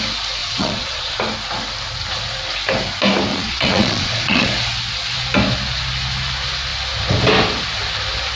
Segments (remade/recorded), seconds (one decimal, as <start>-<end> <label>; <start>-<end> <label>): 0.0-0.4 recorded; 0.4-1.2 remade; 1.2-3.3 recorded; 3.3-4.5 remade; 4.5-8.4 recorded